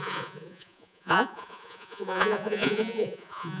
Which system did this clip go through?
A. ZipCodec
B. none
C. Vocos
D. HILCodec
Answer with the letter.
C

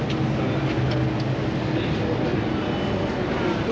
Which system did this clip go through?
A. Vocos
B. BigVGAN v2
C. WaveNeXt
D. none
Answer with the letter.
D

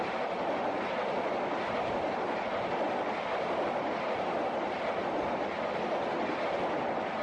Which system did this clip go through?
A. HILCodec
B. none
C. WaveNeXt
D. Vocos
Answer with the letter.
B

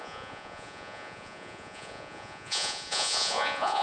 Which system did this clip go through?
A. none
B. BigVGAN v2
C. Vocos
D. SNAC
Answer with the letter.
C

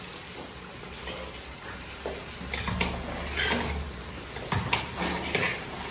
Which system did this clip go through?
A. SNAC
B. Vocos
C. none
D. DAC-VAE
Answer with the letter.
C